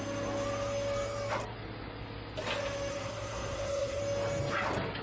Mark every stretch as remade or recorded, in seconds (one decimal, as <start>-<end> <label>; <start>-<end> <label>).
0.0-2.9 recorded; 2.9-4.0 remade; 4.0-5.0 recorded